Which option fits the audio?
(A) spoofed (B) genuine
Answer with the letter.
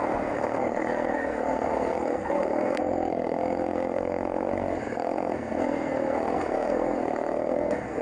A